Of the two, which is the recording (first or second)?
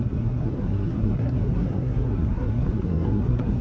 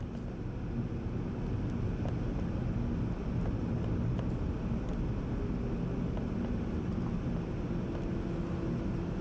second